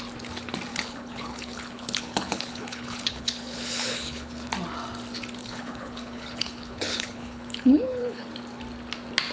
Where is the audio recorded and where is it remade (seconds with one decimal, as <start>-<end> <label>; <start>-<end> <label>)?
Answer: 0.0-0.7 recorded; 0.7-4.5 remade; 4.5-5.4 recorded; 5.4-8.3 remade; 8.3-9.3 recorded